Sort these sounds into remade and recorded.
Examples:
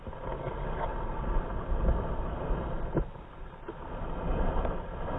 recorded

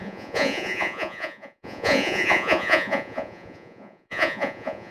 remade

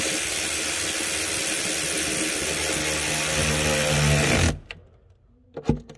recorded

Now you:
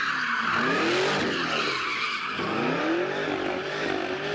recorded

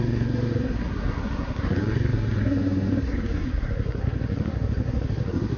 remade